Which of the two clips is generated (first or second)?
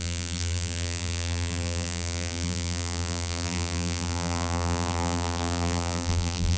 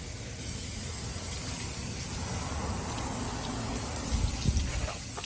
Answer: first